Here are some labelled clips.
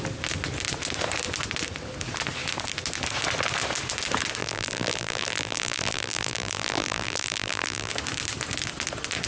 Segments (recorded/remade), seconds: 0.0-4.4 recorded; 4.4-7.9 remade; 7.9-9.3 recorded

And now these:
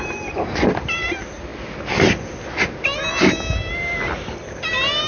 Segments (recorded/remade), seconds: 0.0-5.1 recorded

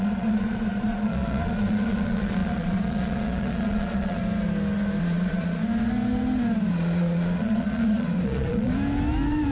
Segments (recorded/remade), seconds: 0.0-4.2 remade; 4.2-5.0 recorded; 5.0-5.6 remade; 5.6-6.7 recorded; 6.7-8.7 remade; 8.7-9.5 recorded